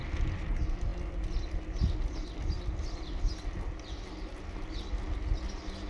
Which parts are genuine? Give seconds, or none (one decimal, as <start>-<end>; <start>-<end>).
0.0-5.9